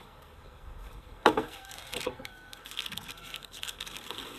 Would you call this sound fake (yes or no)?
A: yes